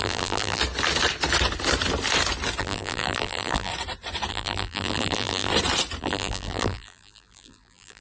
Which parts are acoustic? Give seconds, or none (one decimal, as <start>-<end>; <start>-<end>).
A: 0.6-2.6; 3.7-4.3; 5.5-6.0